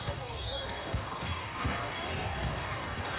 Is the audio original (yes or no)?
no